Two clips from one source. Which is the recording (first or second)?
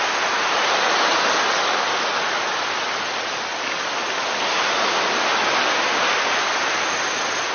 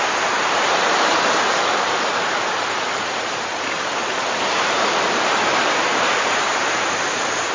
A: first